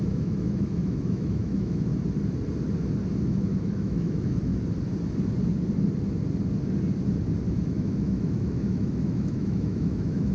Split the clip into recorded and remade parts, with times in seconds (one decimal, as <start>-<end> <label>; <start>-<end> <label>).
0.0-1.9 remade; 1.9-3.2 recorded; 3.2-4.5 remade; 4.5-7.5 recorded; 7.5-10.3 remade